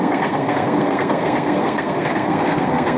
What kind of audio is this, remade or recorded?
remade